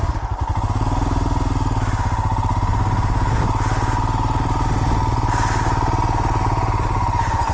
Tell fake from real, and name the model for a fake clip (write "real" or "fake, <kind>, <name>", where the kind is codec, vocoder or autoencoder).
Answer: real